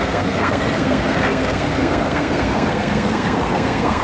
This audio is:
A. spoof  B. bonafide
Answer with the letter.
A